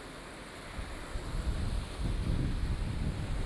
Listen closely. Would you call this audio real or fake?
real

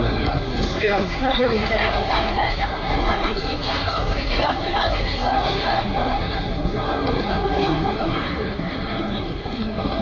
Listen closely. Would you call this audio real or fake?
fake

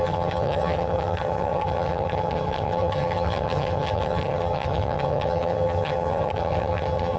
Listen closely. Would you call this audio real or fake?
fake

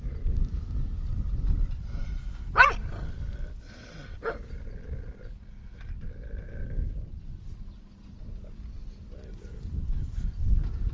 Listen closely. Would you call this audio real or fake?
real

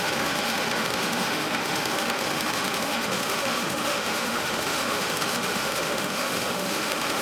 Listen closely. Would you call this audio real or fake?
fake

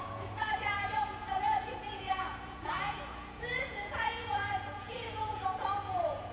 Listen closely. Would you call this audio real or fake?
fake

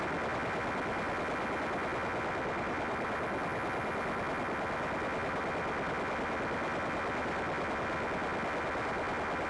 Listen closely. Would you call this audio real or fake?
real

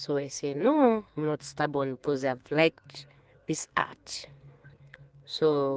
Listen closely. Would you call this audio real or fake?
fake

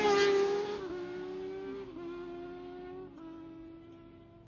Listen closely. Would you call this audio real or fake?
real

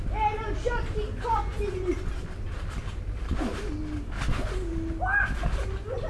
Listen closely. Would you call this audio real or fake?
real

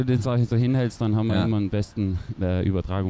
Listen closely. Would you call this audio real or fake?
real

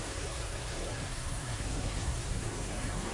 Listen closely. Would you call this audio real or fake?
fake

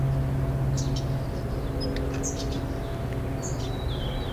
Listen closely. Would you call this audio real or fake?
real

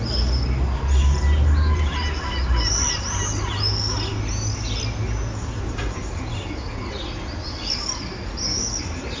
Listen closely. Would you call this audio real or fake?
real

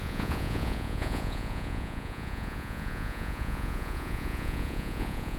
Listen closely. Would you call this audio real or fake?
fake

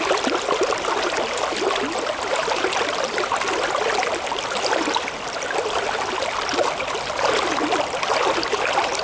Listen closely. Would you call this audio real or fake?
real